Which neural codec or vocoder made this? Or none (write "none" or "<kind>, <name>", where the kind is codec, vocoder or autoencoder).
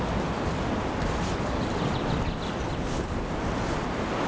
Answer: none